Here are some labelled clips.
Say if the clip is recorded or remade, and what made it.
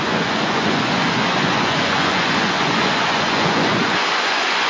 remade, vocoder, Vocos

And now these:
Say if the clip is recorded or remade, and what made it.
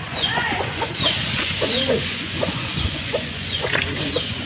remade, vocoder, Vocos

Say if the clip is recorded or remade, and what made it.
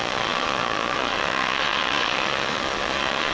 remade, vocoder, Vocos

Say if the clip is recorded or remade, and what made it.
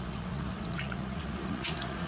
remade, vocoder, Vocos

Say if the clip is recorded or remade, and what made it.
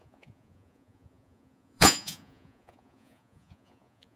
remade, vocoder, Vocos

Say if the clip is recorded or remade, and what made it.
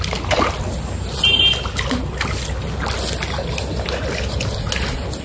recorded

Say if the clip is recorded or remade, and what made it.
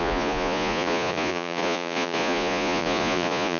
remade, vocoder, Vocos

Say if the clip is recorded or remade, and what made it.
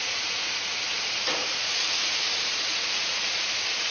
remade, vocoder, Vocos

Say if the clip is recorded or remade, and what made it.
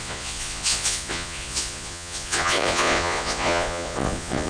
remade, vocoder, Vocos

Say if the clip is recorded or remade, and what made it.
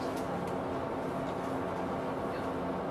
recorded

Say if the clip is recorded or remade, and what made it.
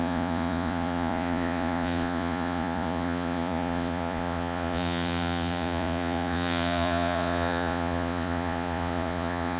remade, vocoder, Vocos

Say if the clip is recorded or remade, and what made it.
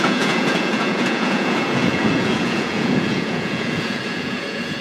remade, vocoder, Vocos